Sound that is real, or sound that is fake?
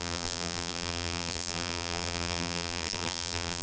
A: fake